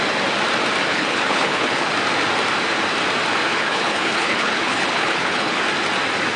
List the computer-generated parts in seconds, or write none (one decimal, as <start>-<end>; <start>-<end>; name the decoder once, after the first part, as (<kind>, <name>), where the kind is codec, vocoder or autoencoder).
0.9-1.9 (codec, HILCodec); 3.5-5.6